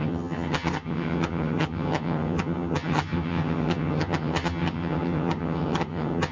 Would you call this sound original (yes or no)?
no